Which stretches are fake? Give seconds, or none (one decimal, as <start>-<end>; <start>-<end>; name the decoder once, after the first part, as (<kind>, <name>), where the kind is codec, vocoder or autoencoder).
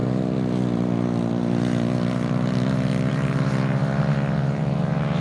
3.1-3.8 (vocoder, BigVGAN v2); 4.6-5.2